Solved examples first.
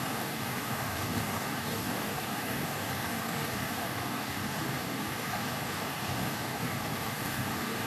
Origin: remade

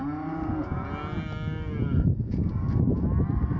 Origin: recorded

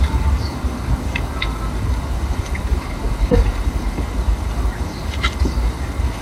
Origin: remade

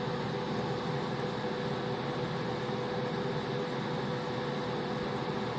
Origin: recorded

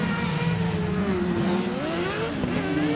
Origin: recorded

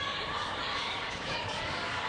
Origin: remade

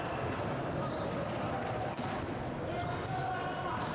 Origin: recorded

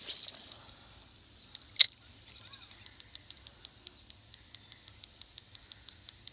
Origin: recorded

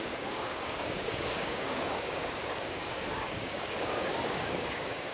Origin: remade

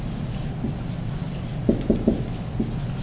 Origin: recorded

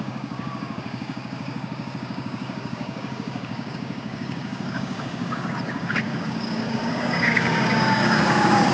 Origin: remade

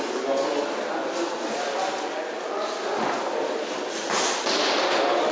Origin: recorded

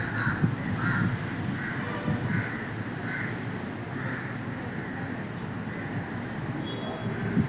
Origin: recorded